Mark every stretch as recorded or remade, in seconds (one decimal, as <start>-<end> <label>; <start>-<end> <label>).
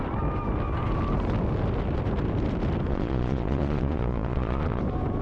0.0-2.9 recorded; 2.9-4.8 remade; 4.8-5.2 recorded